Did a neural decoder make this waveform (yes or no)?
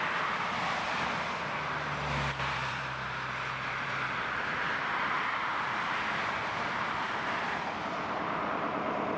yes